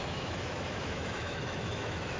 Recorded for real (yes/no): no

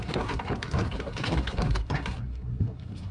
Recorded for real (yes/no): no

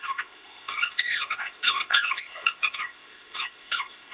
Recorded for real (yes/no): no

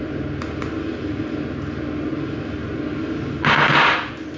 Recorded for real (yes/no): yes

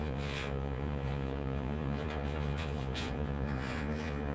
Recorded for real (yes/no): no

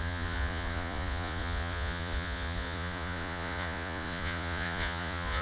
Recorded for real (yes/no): no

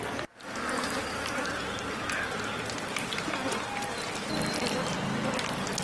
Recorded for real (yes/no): yes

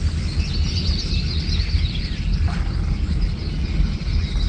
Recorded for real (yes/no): yes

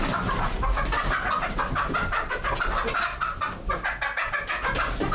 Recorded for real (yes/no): yes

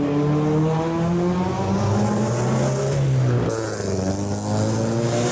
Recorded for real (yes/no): yes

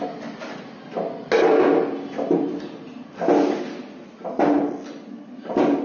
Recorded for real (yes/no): yes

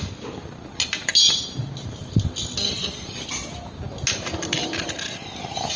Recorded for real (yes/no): yes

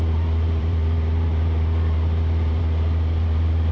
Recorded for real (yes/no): no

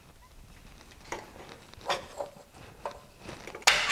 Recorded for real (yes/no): yes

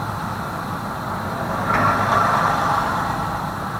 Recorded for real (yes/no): yes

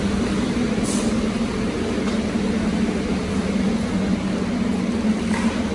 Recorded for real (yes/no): yes